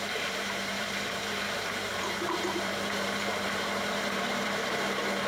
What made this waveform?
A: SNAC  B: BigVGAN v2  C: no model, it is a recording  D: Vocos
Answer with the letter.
B